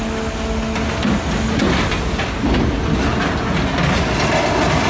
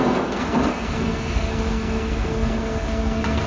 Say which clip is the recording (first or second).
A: first